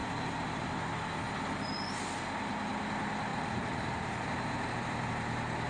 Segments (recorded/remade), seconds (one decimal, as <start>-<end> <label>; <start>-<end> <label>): 0.0-0.6 remade; 0.6-3.3 recorded; 3.3-5.1 remade; 5.1-5.7 recorded